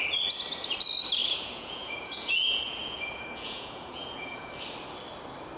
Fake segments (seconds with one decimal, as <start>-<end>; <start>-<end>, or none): 1.2-4.5